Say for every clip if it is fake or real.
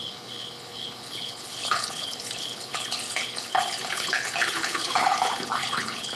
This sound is fake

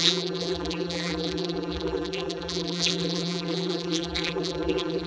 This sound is fake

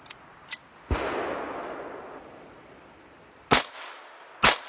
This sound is real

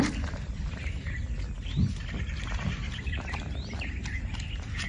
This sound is real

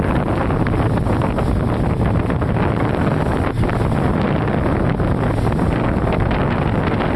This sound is real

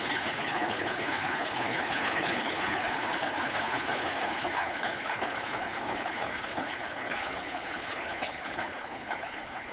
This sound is fake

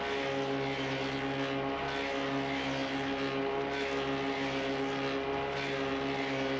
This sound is real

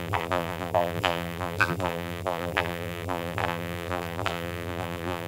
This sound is fake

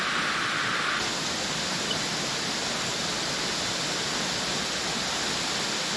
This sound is real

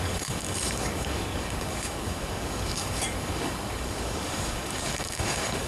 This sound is fake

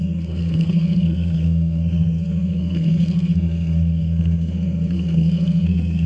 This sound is fake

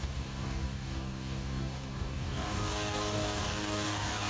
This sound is fake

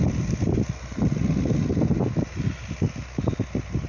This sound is real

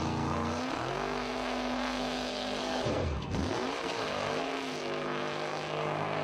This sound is fake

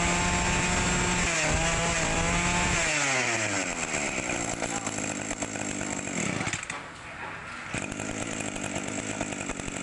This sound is real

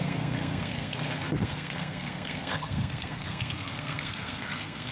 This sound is fake